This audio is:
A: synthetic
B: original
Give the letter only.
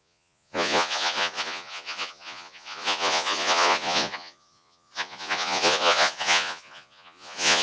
A